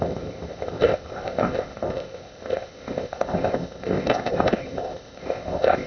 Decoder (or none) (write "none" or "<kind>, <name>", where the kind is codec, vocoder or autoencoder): codec, ZipCodec